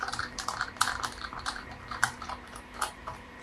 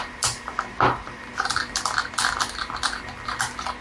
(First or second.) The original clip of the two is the second